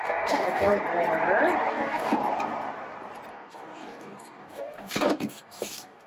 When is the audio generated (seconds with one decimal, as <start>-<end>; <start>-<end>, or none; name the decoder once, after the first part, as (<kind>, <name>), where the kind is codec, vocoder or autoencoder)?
0.0-0.7 (codec, DAC); 1.7-2.2; 3.3-6.1